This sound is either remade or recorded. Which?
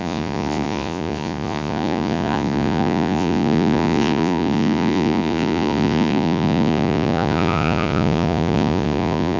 remade